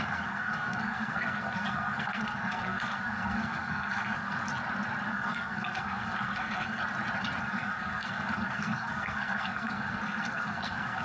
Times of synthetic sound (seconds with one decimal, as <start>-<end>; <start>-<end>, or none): 0.0-4.5; 5.1-6.8; 7.4-11.0